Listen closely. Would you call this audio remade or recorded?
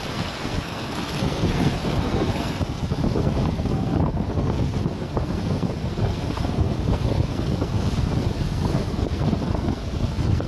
remade